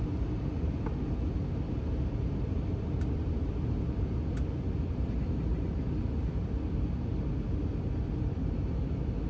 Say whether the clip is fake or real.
real